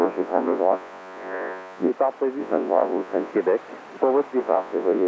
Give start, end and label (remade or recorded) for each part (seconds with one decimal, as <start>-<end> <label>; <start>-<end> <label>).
0.0-1.9 remade; 1.9-2.4 recorded; 2.4-3.3 remade; 3.3-4.4 recorded; 4.4-5.1 remade